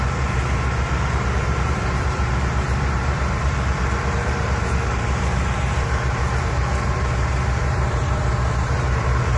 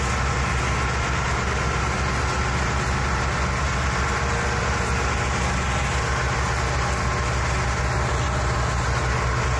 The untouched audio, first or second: second